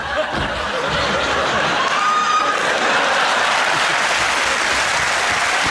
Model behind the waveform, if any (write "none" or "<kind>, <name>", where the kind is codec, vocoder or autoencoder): none